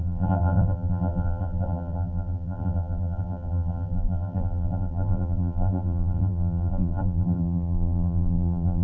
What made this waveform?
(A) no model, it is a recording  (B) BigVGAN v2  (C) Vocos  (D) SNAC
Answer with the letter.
B